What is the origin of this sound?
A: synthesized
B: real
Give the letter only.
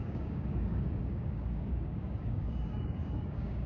A